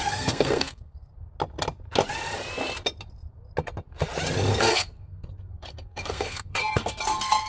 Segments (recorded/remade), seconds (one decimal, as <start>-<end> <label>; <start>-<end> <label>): 0.0-1.1 remade; 1.1-4.6 recorded; 4.6-7.5 remade